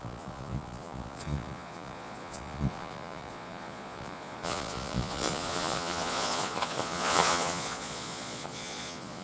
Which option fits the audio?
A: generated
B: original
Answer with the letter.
A